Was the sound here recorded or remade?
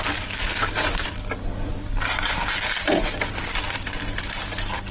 recorded